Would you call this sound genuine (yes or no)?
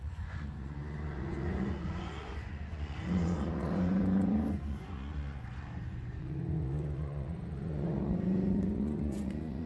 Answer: no